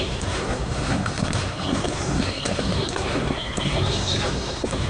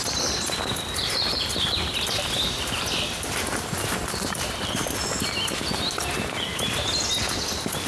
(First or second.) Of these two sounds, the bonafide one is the second